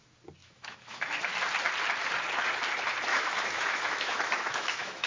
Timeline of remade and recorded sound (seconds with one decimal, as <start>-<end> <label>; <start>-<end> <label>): 0.0-0.4 recorded; 0.4-1.3 remade; 1.3-3.1 recorded; 3.1-5.1 remade